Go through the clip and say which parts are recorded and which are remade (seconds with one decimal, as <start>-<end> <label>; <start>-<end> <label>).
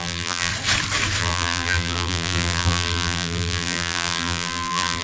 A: 0.0-0.5 remade; 0.5-1.2 recorded; 1.2-5.0 remade